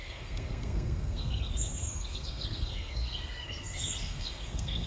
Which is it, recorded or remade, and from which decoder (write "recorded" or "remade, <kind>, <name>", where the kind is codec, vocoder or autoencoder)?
remade, codec, SNAC